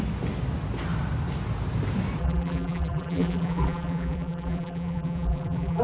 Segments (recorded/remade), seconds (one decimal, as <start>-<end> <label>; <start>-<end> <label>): 0.0-2.2 recorded; 2.2-5.8 remade